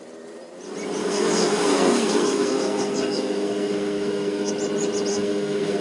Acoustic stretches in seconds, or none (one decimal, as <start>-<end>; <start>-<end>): 0.0-1.0; 4.5-5.1